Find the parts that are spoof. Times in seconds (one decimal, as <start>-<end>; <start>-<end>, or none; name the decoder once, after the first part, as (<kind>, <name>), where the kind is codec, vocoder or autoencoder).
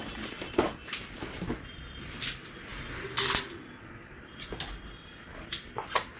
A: none